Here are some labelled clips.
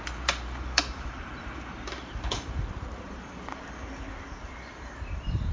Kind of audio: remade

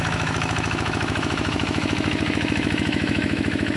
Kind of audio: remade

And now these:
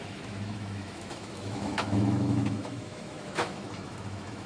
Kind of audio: remade